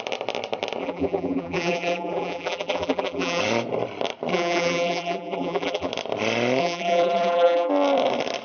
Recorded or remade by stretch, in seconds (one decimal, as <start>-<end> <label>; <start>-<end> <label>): 0.0-0.8 recorded; 0.8-3.4 remade; 3.4-4.3 recorded; 4.3-5.9 remade; 5.9-6.6 recorded; 6.6-7.7 remade; 7.7-8.4 recorded